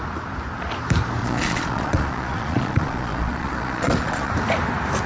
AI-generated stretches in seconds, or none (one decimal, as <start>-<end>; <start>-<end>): 1.2-4.3